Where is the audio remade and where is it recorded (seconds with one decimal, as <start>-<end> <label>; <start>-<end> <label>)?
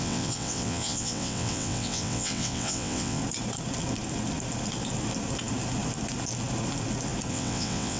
0.0-3.2 remade; 3.2-7.3 recorded; 7.3-8.0 remade